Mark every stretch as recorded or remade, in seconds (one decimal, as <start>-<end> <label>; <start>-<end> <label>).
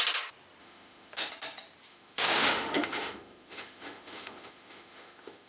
0.0-0.6 recorded; 0.6-1.3 remade; 1.3-1.9 recorded; 1.9-5.5 remade